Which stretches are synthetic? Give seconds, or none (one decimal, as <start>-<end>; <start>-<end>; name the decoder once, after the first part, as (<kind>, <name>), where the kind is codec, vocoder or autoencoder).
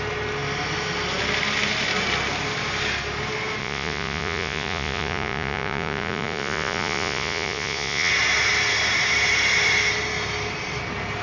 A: 3.6-8.1 (vocoder, Vocos)